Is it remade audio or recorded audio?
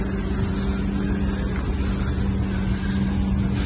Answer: recorded